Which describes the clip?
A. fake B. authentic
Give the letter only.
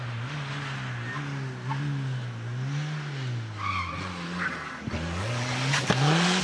B